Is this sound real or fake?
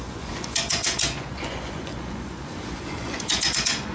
fake